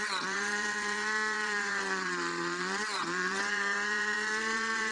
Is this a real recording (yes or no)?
no